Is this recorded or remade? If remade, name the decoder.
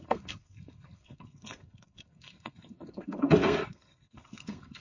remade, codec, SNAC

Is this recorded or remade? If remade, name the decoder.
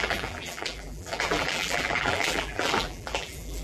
remade, vocoder, BigVGAN v2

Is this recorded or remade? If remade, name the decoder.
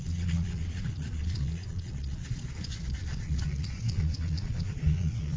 remade, vocoder, Vocos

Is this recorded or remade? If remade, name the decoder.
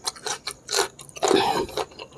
recorded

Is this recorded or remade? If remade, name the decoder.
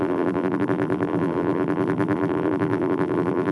remade, vocoder, BigVGAN v2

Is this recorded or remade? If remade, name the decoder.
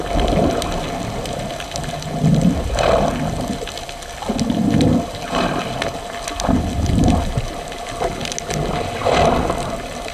recorded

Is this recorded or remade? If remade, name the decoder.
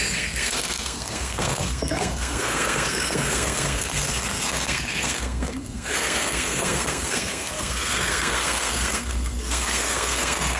remade, codec, SNAC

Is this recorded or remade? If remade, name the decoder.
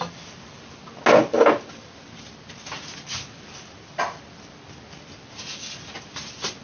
recorded